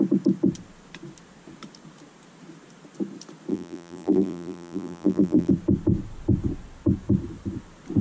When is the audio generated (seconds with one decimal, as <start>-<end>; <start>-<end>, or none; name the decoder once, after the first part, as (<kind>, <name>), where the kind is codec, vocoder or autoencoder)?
3.5-5.5 (vocoder, BigVGAN v2)